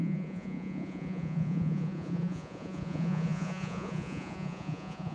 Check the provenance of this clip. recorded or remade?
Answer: remade